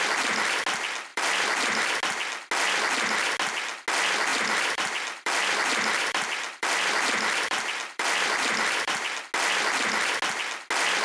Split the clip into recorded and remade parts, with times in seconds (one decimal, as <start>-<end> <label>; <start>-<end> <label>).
0.0-1.1 recorded; 1.1-1.8 remade; 1.8-4.3 recorded; 4.3-9.2 remade; 9.2-11.0 recorded